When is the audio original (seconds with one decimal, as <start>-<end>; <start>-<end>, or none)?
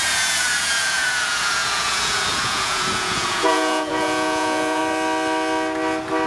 4.8-6.3